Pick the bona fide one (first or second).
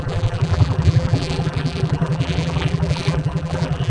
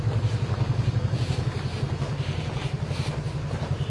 second